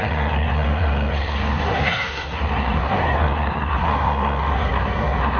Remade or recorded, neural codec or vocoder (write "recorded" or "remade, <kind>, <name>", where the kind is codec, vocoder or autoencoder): remade, codec, SNAC